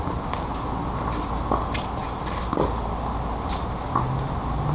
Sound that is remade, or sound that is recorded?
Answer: recorded